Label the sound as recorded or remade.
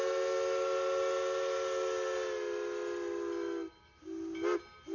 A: recorded